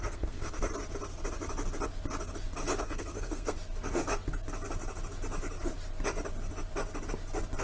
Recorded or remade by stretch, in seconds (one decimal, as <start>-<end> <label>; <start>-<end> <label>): 0.0-0.7 remade; 0.7-2.8 recorded; 2.8-3.6 remade; 3.6-7.6 recorded